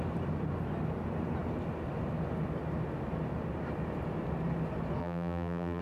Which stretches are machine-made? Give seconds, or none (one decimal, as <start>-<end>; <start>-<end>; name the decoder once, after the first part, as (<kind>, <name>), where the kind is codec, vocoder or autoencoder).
5.0-5.8 (vocoder, BigVGAN v2)